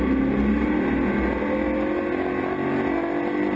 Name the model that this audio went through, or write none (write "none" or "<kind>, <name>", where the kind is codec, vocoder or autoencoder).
none